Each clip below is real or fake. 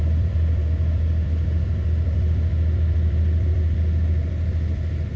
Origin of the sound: fake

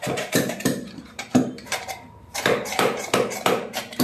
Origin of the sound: fake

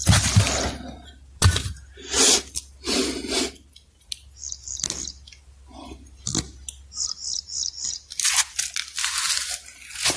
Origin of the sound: real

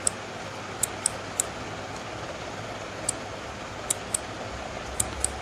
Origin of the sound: fake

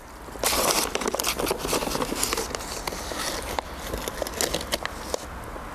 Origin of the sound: real